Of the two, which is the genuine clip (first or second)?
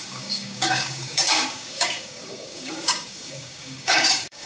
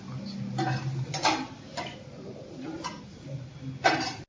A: second